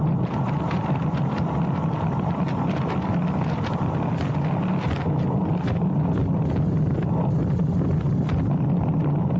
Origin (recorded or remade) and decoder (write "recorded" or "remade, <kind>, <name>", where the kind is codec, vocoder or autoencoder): recorded